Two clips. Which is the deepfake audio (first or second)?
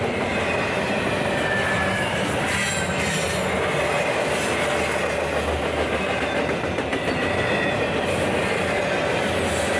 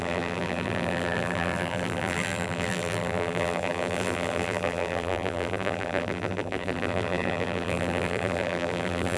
second